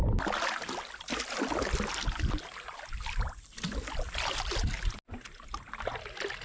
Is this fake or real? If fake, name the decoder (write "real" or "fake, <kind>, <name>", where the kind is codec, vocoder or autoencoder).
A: real